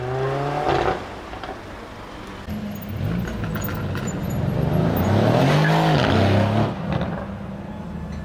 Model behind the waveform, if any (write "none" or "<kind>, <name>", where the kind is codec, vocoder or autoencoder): none